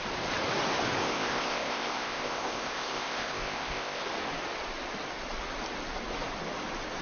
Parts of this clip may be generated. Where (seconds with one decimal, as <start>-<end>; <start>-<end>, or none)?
1.0-4.0